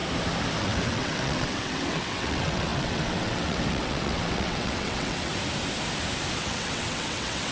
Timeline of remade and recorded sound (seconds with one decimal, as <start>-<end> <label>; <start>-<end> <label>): 0.0-0.6 recorded; 0.6-5.3 remade; 5.3-6.4 recorded; 6.4-7.5 remade